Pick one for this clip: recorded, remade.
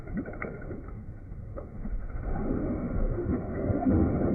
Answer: remade